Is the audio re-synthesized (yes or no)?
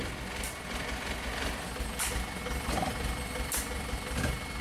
no